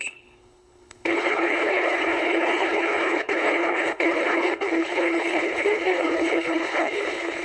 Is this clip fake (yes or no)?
yes